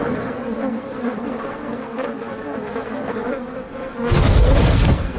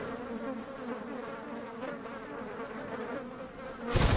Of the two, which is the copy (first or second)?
first